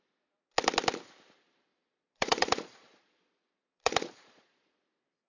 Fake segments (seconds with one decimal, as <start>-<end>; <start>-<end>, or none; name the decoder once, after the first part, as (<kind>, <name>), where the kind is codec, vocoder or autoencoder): 1.7-4.8 (vocoder, Vocos)